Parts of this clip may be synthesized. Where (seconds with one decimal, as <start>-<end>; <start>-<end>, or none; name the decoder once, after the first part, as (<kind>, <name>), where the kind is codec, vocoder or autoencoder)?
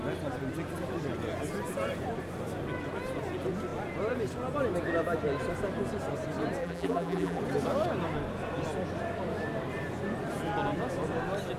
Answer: 6.6-7.4 (vocoder, BigVGAN v2)